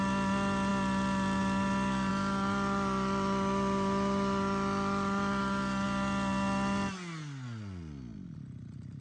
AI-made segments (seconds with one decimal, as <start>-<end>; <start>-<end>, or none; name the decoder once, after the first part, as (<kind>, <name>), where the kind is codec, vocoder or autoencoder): none

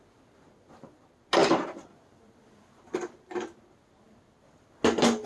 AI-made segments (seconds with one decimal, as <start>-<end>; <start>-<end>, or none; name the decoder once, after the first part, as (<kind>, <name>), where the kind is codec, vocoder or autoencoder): 1.4-1.9 (vocoder, BigVGAN v2)

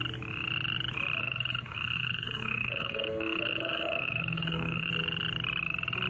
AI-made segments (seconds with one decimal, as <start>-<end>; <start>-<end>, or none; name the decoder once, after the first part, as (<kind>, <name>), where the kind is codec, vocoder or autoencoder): 1.2-4.9 (codec, SNAC)

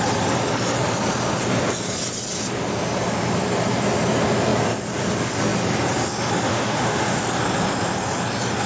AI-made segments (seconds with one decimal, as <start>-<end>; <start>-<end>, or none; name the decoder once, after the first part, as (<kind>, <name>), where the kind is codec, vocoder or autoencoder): 6.5-7.2 (autoencoder, DAC-VAE)

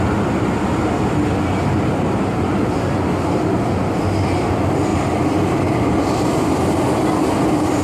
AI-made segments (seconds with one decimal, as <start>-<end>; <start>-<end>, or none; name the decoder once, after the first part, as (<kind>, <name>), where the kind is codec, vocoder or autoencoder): none

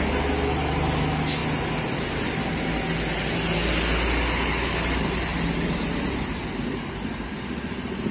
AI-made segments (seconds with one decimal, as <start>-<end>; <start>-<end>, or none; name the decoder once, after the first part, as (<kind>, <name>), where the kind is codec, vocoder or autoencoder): none

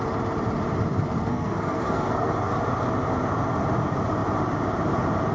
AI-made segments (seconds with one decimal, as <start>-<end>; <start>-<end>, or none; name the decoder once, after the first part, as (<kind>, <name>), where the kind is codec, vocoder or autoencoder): 1.2-2.5 (codec, SNAC)

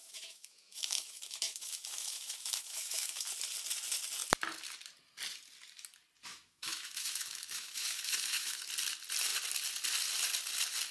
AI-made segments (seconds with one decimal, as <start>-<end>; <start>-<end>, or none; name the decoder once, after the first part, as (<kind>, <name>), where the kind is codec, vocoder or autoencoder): 0.0-3.3 (autoencoder, DAC-VAE); 6.3-8.7